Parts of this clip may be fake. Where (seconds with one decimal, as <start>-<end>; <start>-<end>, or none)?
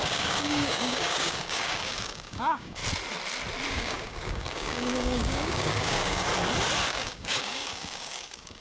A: 0.0-2.8; 3.7-6.3; 6.9-8.6